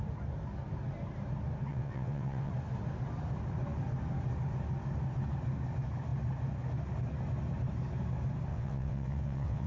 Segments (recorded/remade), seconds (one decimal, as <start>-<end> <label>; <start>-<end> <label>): 0.0-1.7 recorded; 1.7-2.5 remade; 2.5-8.5 recorded; 8.5-9.7 remade